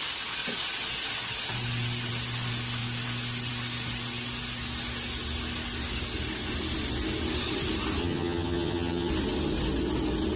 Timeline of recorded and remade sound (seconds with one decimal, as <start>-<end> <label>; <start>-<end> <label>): 0.0-8.0 recorded; 8.0-9.1 remade; 9.1-10.4 recorded